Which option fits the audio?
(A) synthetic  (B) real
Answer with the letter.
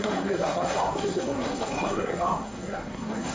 A